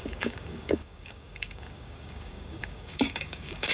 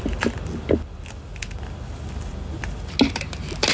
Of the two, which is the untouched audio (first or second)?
second